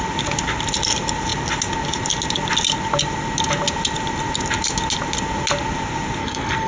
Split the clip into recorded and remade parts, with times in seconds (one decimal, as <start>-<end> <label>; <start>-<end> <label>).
0.0-6.2 recorded; 6.2-6.7 remade

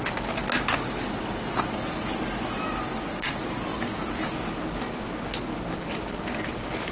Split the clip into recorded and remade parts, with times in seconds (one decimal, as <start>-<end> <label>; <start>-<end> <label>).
0.0-6.9 recorded

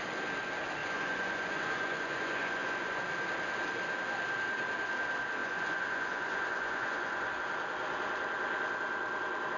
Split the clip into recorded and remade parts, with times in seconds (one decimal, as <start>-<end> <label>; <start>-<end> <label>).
0.0-0.8 recorded; 0.8-3.0 remade; 3.0-5.4 recorded; 5.4-7.3 remade; 7.3-9.6 recorded

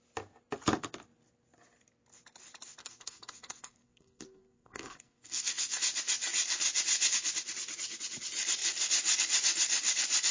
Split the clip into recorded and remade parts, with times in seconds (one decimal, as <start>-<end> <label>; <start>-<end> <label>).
0.0-2.8 recorded; 2.8-5.8 remade; 5.8-10.3 recorded

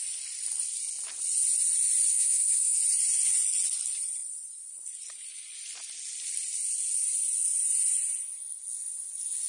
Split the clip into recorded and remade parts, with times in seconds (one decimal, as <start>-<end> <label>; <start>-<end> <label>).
0.0-2.1 recorded; 2.1-2.8 remade; 2.8-9.5 recorded